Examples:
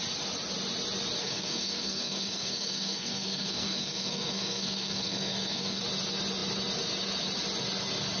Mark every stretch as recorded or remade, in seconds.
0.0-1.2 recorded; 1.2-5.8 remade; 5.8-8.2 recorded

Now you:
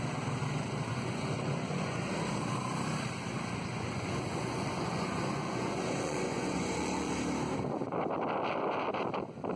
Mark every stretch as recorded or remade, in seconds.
0.0-0.9 recorded; 0.9-2.0 remade; 2.0-3.7 recorded; 3.7-7.1 remade; 7.1-9.6 recorded

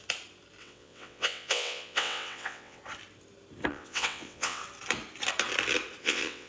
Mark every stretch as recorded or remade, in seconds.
0.0-0.6 recorded; 0.6-2.8 remade; 2.8-3.7 recorded; 3.7-4.6 remade; 4.6-6.0 recorded; 6.0-6.5 remade

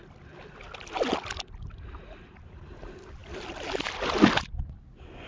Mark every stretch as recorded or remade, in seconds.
0.0-5.3 recorded

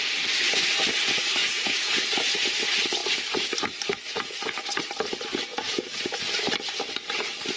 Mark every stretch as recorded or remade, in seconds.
0.0-1.4 recorded; 1.4-2.0 remade; 2.0-5.5 recorded; 5.5-6.2 remade; 6.2-7.6 recorded

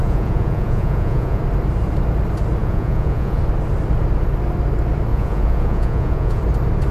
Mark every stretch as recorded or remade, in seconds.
0.0-1.4 remade; 1.4-2.6 recorded; 2.6-3.4 remade; 3.4-5.1 recorded; 5.1-6.4 remade; 6.4-6.9 recorded

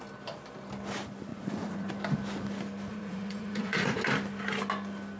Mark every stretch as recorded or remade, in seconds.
0.0-1.3 recorded; 1.3-1.9 remade; 1.9-2.9 recorded; 2.9-4.0 remade; 4.0-5.2 recorded